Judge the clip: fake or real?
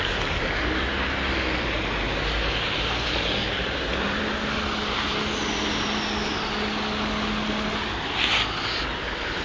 real